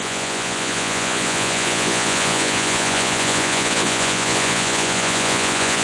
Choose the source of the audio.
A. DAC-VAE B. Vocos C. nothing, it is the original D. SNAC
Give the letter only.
B